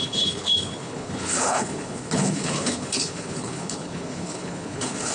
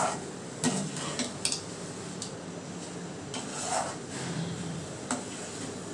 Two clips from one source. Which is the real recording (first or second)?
second